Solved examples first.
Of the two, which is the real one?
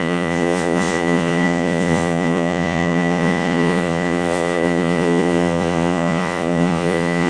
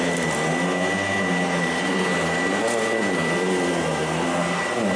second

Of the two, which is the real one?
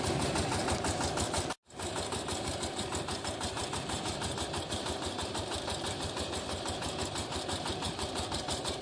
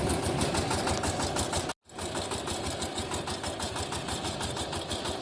second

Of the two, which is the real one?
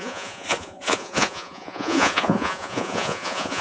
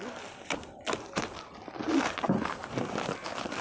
second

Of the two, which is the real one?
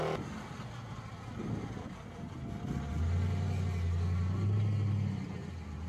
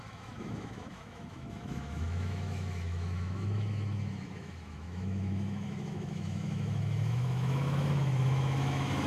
first